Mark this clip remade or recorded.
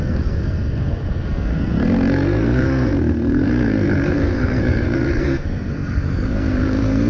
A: remade